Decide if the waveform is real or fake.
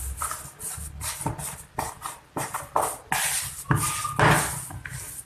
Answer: real